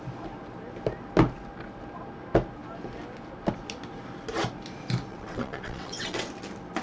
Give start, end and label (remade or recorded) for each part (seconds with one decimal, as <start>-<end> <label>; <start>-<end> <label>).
0.0-5.1 recorded; 5.1-6.3 remade; 6.3-6.8 recorded